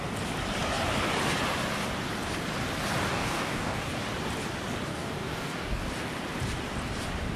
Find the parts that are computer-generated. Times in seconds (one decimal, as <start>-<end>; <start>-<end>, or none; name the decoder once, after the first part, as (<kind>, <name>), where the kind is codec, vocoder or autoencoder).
3.1-3.9 (codec, DAC); 4.9-5.8